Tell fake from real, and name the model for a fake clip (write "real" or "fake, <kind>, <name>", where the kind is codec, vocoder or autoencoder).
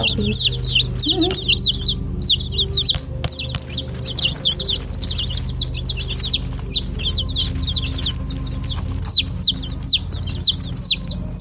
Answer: real